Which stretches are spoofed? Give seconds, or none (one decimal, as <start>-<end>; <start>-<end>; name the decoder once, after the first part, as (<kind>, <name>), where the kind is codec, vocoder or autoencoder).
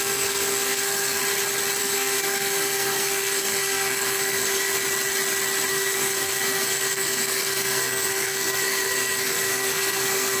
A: 0.0-1.2 (codec, SNAC); 1.8-4.7; 5.7-10.4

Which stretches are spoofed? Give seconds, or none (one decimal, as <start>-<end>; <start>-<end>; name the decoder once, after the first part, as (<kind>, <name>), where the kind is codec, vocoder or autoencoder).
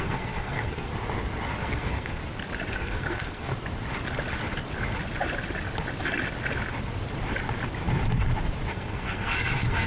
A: 0.0-0.9 (codec, SNAC); 1.6-2.2; 2.7-3.5; 8.7-9.9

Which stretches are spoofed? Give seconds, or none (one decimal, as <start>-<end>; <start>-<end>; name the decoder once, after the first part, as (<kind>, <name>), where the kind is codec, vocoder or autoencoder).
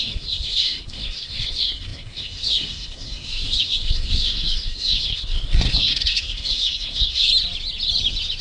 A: 0.0-7.3 (codec, SNAC)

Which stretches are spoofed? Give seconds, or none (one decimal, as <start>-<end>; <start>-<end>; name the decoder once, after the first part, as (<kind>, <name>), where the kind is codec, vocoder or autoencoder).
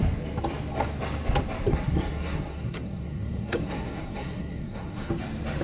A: 1.7-5.1 (codec, SNAC)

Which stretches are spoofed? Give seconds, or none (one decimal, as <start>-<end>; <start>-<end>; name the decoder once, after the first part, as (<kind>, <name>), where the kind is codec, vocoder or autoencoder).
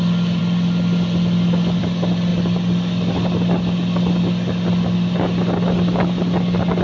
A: none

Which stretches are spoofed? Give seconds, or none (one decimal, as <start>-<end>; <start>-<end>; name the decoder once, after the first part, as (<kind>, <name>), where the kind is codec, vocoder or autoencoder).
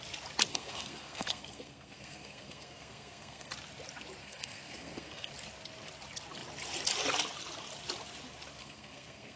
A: 0.5-3.5 (codec, SNAC); 4.2-5.3; 8.6-9.4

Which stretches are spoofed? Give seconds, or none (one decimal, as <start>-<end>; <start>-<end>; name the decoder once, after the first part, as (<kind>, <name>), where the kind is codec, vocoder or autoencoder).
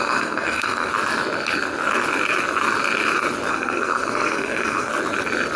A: 0.0-0.9 (codec, SNAC); 3.5-4.9